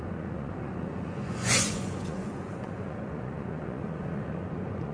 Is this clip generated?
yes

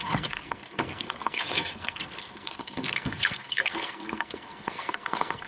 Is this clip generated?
yes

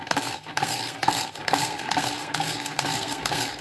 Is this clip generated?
yes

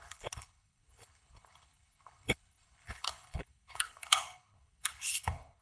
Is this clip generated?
yes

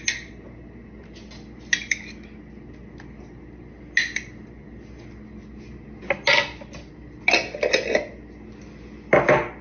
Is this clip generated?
no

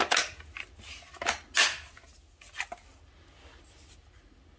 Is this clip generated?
no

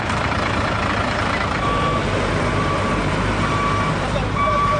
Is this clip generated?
yes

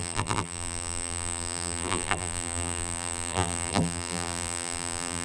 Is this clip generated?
yes